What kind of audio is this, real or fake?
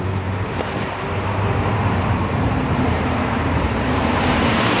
fake